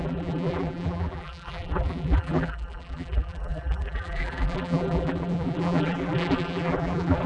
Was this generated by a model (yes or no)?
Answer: yes